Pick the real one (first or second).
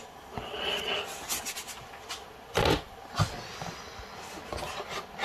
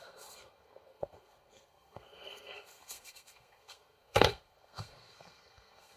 first